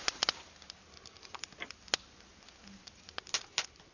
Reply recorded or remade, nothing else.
recorded